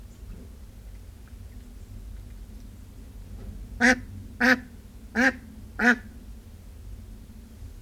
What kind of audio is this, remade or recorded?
recorded